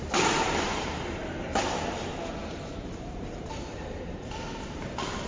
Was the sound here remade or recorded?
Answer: remade